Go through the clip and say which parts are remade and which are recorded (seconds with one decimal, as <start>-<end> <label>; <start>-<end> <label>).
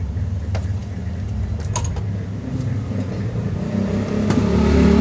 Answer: 0.0-5.0 recorded